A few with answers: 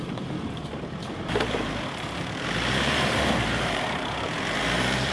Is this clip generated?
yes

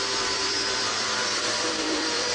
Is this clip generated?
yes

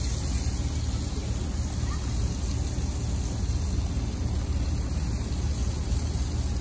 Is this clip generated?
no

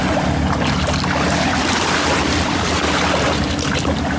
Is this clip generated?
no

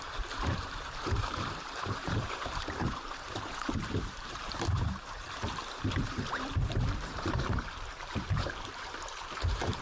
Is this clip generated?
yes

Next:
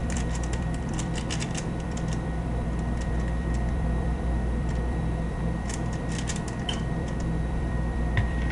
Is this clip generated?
yes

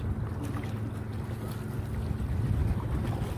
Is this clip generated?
no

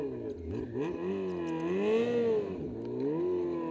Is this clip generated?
no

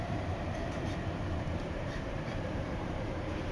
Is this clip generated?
yes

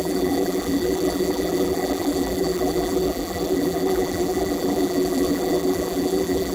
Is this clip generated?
yes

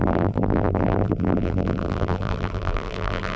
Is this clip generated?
yes